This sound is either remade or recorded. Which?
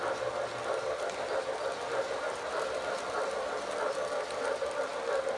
recorded